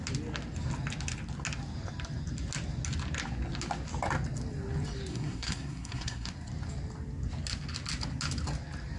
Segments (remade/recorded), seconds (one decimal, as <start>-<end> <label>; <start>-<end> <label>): 0.0-5.1 recorded; 5.1-6.3 remade; 6.3-9.0 recorded